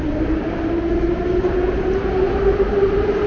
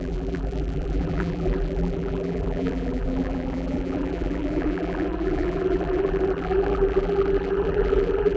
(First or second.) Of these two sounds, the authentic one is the first